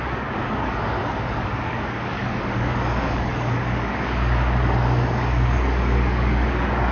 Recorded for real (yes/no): no